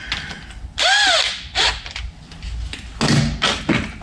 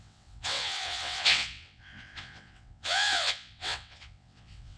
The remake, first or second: second